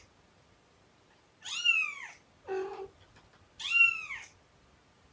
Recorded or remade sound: recorded